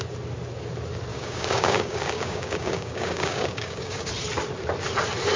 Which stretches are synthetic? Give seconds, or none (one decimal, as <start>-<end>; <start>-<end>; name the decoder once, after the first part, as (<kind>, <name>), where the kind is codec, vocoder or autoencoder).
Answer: 1.1-4.1 (codec, DAC)